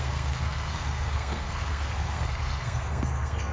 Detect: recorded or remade remade